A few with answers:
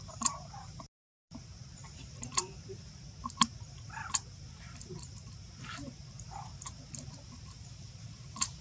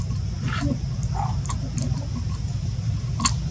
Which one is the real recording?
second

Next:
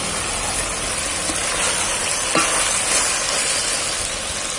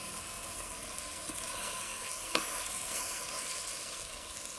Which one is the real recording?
first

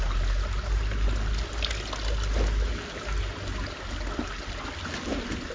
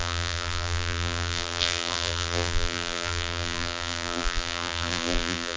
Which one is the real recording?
first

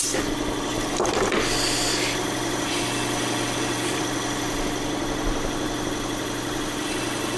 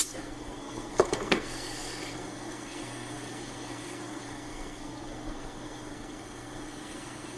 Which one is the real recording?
first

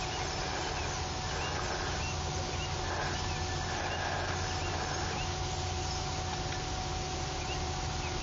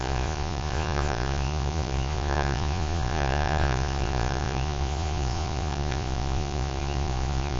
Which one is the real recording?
first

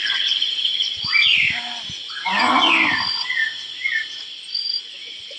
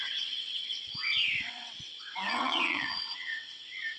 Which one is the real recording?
first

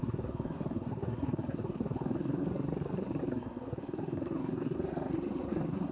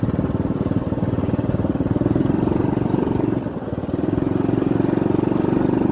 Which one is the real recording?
second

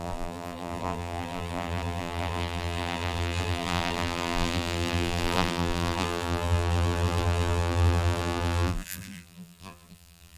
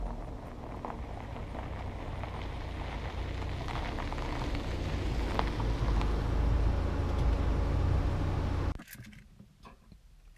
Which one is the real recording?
second